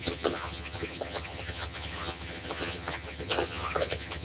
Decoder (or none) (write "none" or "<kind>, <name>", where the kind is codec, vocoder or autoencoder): vocoder, HiFi-GAN